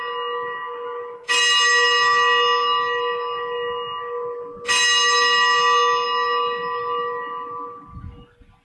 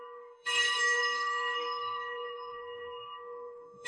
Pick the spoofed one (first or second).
second